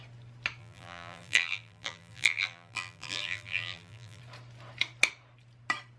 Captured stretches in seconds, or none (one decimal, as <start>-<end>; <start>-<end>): 0.0-0.6; 4.2-6.0